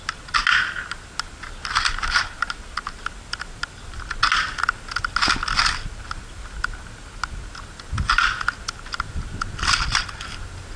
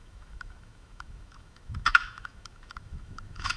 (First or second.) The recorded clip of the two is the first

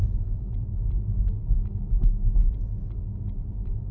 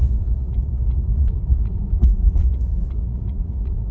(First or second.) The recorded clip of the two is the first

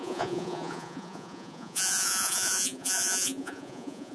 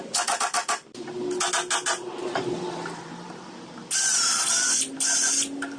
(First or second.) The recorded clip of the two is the second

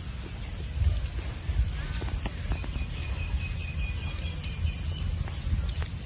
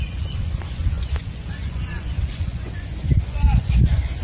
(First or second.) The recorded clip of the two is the first